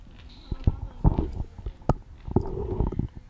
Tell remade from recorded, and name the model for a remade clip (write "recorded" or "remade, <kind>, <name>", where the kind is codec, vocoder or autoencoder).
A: recorded